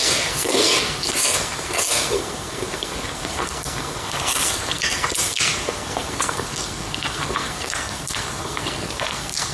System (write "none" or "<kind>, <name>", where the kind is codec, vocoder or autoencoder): codec, SNAC